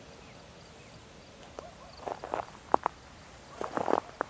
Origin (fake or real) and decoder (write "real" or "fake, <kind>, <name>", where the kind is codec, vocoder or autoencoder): real